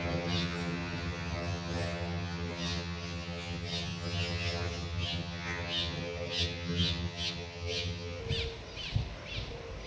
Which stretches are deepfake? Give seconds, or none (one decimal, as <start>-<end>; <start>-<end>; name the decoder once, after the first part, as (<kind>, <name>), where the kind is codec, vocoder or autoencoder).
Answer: 0.0-8.2 (vocoder, HiFi-GAN)